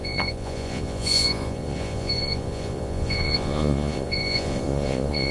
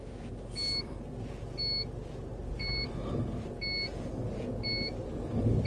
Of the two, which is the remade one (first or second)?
first